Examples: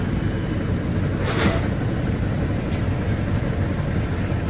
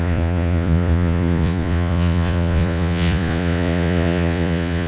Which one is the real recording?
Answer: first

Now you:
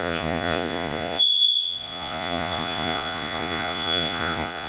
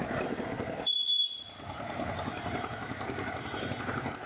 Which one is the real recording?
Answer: second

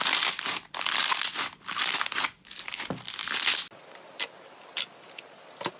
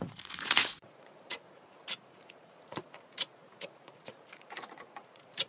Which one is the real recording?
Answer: first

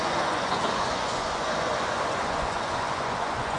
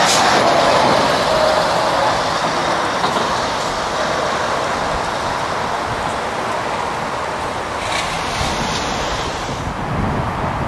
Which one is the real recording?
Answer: second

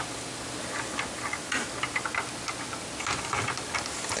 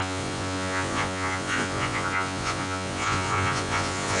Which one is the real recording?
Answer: first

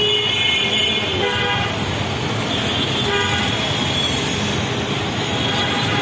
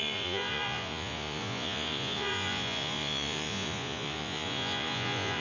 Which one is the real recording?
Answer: first